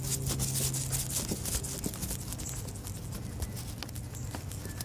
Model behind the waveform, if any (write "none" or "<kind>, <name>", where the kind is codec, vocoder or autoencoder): none